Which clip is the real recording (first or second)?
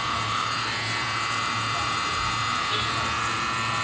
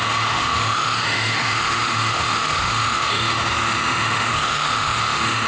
first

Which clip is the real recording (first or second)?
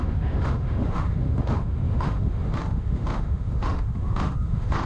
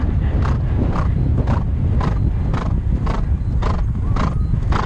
second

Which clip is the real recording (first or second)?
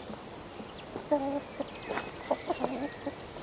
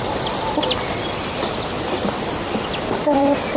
first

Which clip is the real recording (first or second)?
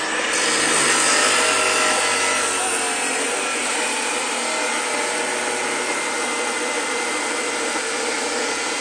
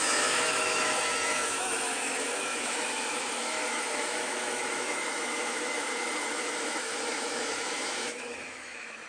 first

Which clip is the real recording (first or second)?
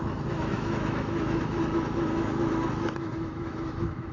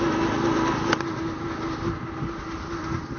second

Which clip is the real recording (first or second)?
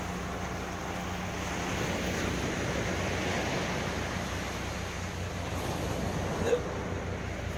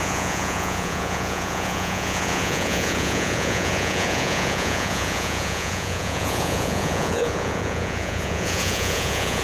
first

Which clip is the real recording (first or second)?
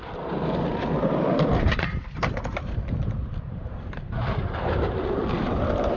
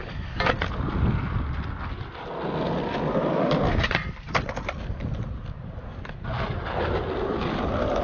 second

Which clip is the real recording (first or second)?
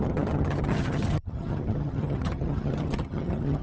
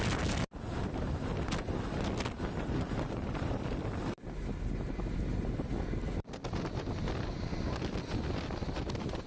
second